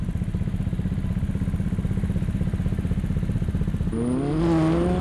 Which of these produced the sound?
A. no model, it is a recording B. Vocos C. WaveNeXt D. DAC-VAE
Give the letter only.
A